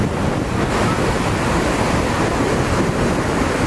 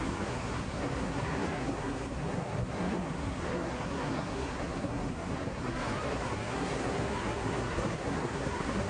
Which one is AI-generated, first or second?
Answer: second